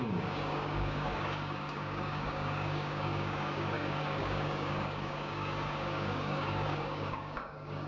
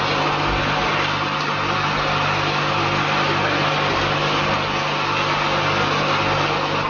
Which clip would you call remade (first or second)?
first